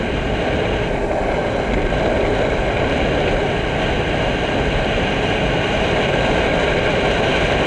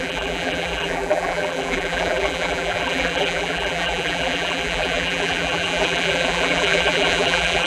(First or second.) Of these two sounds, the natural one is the first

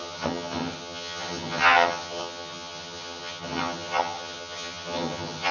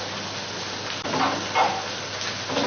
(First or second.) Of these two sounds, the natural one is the second